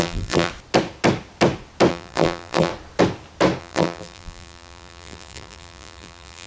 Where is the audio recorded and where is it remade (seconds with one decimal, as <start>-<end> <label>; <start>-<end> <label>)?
0.0-0.5 remade; 0.5-1.9 recorded; 1.9-2.7 remade; 2.7-3.6 recorded; 3.6-6.5 remade